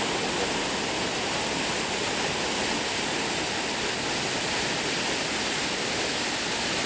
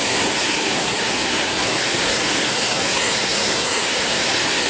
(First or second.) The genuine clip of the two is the first